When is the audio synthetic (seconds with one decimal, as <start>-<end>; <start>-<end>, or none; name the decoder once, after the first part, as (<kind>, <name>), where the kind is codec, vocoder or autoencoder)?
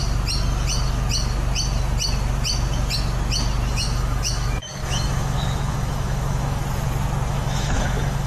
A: 3.7-6.6 (autoencoder, DAC-VAE); 7.3-8.3